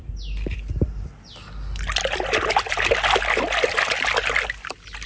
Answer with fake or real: real